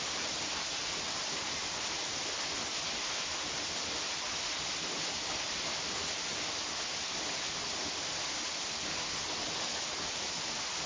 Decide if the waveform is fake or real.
real